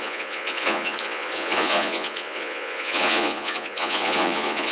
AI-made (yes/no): yes